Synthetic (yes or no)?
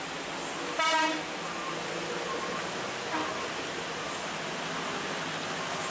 no